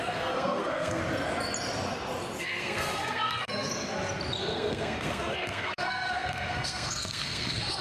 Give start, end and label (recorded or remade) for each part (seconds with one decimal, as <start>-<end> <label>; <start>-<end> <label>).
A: 0.0-1.0 remade; 1.0-2.4 recorded; 2.4-3.7 remade; 3.7-4.4 recorded; 4.4-7.8 remade